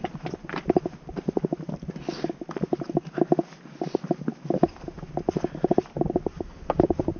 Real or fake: real